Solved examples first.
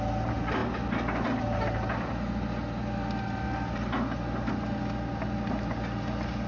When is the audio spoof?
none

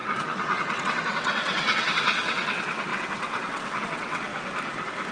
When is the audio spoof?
0.0-4.3 (vocoder, WaveNeXt)

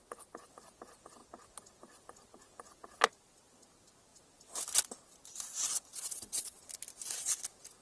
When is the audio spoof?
5.9-6.6 (vocoder, WaveNeXt)

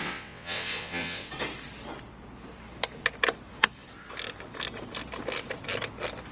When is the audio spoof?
0.0-1.3 (vocoder, WaveNeXt)